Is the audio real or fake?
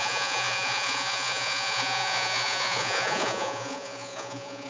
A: fake